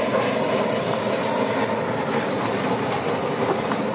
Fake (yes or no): no